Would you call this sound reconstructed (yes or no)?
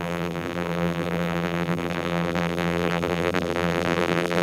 yes